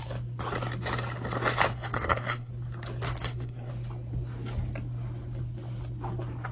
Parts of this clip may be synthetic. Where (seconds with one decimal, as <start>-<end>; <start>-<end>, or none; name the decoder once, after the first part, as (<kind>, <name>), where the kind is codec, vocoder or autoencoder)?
1.7-2.5 (codec, SNAC); 3.2-3.7